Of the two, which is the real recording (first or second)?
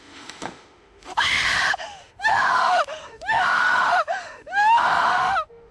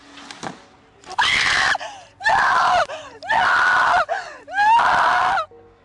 second